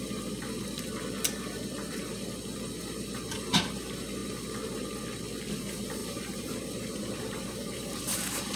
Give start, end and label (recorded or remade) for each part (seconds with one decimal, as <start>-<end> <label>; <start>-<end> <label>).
0.0-6.0 recorded; 6.0-8.6 remade

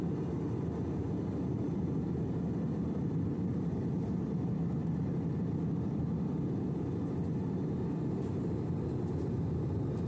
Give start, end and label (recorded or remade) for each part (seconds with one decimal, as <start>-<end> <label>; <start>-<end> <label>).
0.0-1.5 recorded; 1.5-6.0 remade; 6.0-10.1 recorded